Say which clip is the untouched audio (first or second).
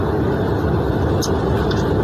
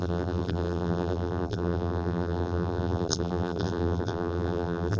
first